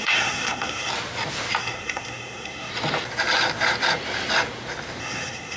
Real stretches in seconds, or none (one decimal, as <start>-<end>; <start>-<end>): 0.9-1.6; 2.7-5.0